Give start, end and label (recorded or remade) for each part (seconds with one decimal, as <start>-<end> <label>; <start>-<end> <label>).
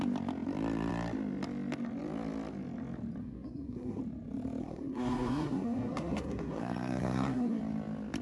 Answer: 0.0-3.2 recorded; 3.2-4.0 remade; 4.0-4.6 recorded; 4.6-7.6 remade; 7.6-8.2 recorded